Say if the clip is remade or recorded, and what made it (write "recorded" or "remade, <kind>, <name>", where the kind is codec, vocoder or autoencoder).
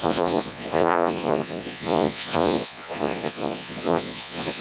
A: remade, vocoder, Vocos